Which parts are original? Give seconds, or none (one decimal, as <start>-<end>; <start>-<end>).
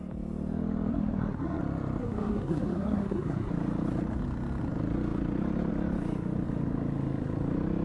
0.0-0.9; 1.6-2.0; 3.5-7.8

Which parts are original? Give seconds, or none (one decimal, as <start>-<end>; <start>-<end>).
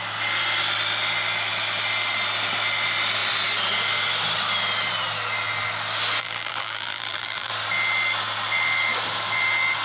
0.0-6.2; 7.5-9.8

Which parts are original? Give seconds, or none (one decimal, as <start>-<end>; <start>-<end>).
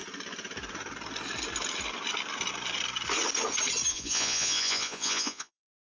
0.0-3.9